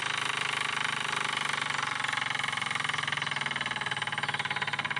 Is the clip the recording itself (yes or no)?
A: yes